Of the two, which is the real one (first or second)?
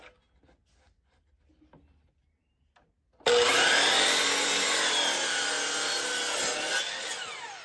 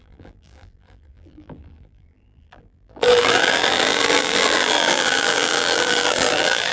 first